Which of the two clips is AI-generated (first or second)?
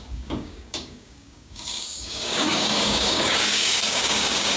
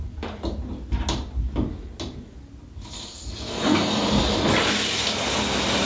first